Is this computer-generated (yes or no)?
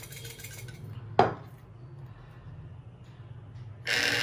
no